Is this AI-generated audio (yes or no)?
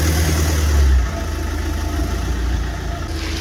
no